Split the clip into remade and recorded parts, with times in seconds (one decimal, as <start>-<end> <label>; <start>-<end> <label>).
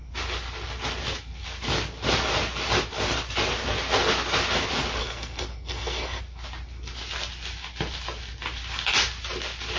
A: 0.0-5.0 recorded; 5.0-6.2 remade; 6.2-9.8 recorded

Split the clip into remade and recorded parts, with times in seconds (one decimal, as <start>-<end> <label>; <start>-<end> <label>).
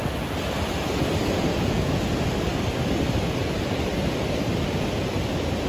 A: 0.0-1.5 recorded; 1.5-2.0 remade; 2.0-5.7 recorded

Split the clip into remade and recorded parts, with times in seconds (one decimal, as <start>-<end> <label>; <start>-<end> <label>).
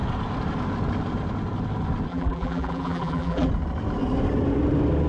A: 0.0-2.1 recorded; 2.1-3.5 remade; 3.5-5.1 recorded